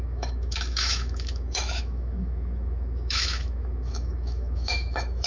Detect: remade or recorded remade